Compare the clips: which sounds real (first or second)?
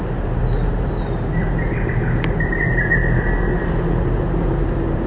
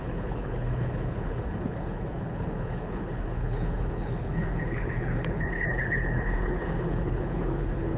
first